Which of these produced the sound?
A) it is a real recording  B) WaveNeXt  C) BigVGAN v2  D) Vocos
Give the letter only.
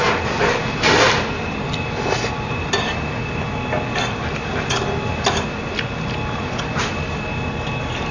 A